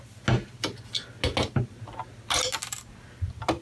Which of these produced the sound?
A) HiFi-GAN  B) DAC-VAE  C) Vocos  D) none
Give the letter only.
D